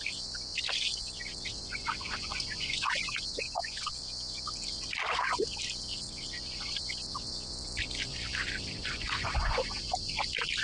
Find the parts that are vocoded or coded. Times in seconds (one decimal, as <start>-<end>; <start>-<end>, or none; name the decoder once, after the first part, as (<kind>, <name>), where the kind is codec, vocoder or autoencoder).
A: 1.6-3.9 (vocoder, Vocos); 8.8-9.8